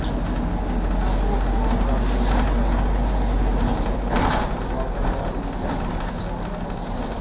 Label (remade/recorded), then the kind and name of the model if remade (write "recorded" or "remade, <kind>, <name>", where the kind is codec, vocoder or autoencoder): recorded